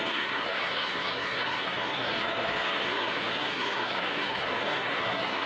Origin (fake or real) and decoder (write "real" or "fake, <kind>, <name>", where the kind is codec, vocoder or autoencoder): fake, codec, SNAC